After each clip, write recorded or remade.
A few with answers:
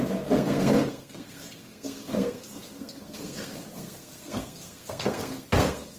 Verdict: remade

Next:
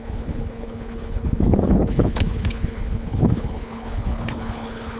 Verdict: remade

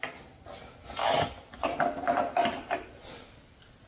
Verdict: recorded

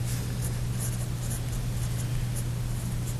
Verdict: recorded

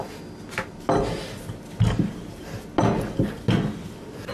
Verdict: recorded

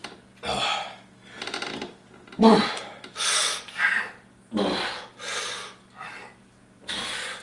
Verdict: recorded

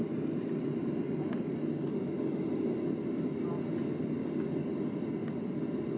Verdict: recorded